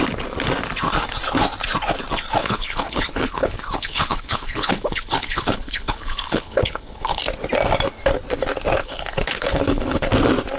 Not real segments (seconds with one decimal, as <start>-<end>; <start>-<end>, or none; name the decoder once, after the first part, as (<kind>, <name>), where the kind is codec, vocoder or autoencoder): 2.4-7.2 (codec, HILCodec); 8.8-10.1